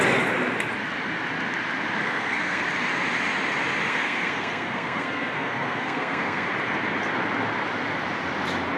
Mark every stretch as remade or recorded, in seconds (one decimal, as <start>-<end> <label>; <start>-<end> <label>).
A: 0.0-2.0 recorded; 2.0-2.6 remade; 2.6-3.9 recorded; 3.9-6.5 remade; 6.5-8.8 recorded